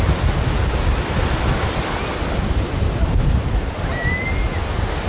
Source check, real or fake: real